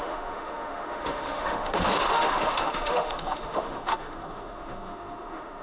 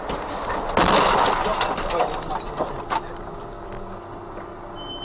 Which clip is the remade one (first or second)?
first